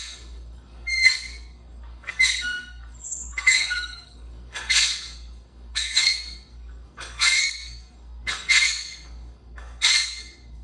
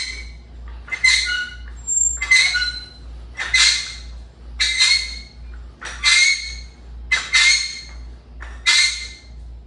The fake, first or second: first